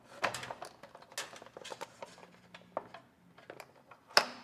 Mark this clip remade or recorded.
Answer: recorded